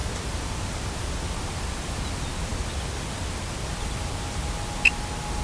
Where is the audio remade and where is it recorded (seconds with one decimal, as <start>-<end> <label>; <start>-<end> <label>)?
0.0-5.4 recorded